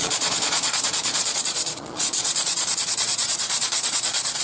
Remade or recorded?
remade